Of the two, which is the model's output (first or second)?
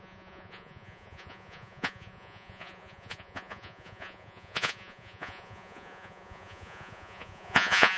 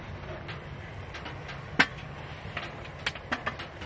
first